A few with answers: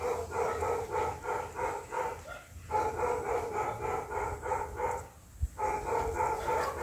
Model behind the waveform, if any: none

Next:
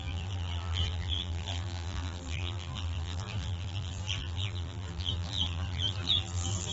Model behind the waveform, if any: vocoder, BigVGAN v2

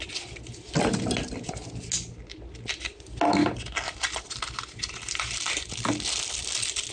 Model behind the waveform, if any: none